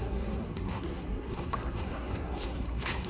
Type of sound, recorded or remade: remade